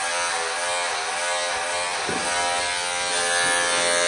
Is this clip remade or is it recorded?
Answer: recorded